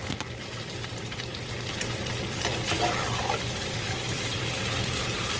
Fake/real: real